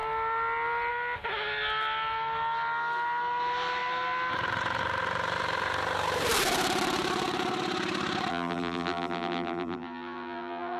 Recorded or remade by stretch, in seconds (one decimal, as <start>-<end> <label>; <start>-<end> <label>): 0.0-8.3 recorded; 8.3-10.8 remade